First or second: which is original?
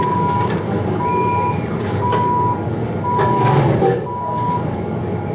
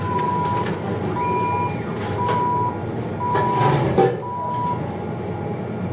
second